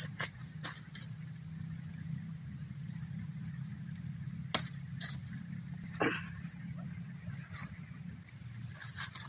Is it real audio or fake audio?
real